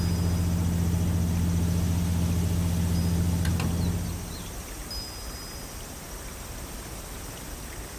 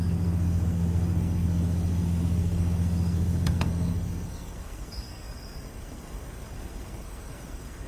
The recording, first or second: first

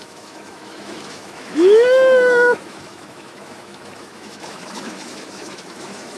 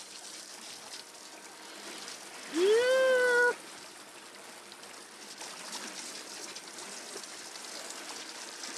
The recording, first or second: second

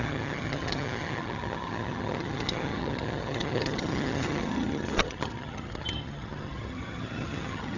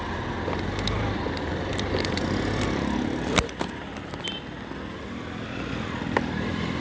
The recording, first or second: second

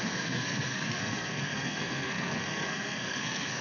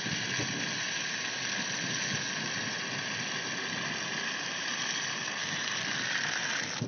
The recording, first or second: second